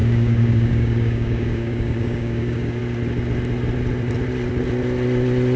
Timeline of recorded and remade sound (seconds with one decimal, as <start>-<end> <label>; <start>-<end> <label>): 0.0-2.8 remade; 2.8-5.6 recorded